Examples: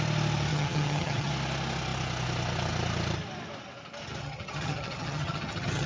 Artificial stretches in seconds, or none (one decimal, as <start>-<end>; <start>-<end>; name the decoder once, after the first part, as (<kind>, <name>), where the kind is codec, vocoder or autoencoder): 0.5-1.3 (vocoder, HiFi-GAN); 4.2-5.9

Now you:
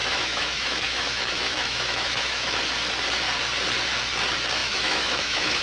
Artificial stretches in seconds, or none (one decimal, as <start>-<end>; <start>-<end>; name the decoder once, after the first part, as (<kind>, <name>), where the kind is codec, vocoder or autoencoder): 0.0-2.6 (autoencoder, DAC-VAE); 4.6-5.6

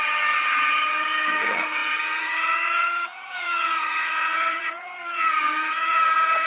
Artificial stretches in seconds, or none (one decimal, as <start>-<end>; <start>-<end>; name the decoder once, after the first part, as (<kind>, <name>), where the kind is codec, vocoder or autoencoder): 0.0-6.5 (vocoder, HiFi-GAN)

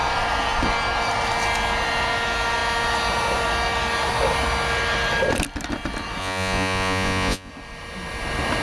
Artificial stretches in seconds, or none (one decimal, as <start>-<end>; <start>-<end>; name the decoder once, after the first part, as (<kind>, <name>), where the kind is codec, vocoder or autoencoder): 6.2-7.5 (vocoder, Vocos)

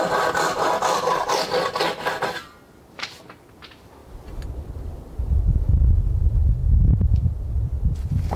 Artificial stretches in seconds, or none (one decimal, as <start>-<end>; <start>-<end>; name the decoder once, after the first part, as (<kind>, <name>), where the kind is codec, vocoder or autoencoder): 0.0-8.4 (vocoder, BigVGAN v2)

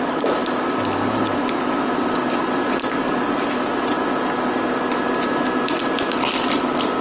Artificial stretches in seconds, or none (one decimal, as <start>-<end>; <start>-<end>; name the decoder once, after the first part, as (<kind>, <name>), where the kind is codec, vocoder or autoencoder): none